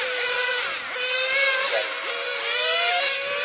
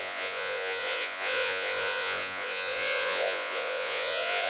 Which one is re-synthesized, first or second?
second